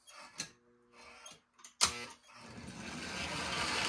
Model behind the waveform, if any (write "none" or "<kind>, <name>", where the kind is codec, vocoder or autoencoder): none